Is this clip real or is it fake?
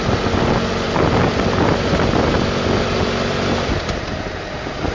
real